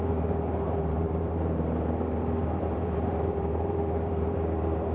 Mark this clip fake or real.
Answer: fake